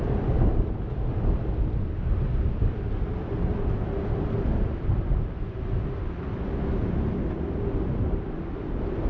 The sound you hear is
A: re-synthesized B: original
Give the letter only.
B